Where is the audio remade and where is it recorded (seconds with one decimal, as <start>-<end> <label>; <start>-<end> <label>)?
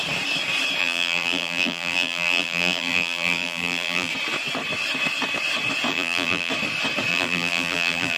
0.0-0.8 recorded; 0.8-4.1 remade; 4.1-5.9 recorded; 5.9-6.5 remade; 6.5-7.1 recorded; 7.1-8.2 remade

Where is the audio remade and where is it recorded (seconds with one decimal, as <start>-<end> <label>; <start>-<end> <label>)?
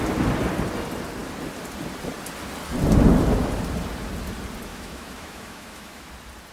0.0-4.7 recorded; 4.7-6.1 remade; 6.1-6.5 recorded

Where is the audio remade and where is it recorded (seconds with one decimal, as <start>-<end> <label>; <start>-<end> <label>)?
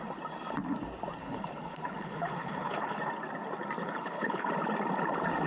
0.0-1.2 recorded; 1.2-3.0 remade; 3.0-3.8 recorded; 3.8-4.5 remade; 4.5-5.5 recorded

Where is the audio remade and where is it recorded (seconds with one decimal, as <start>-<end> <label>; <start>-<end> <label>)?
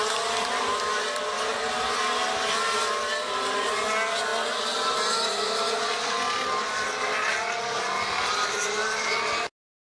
0.0-9.9 recorded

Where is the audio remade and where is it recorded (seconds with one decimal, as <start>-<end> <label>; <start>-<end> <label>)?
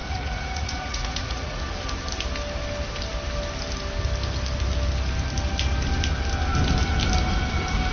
0.0-1.6 remade; 1.6-7.9 recorded